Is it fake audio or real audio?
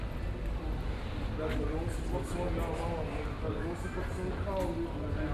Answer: real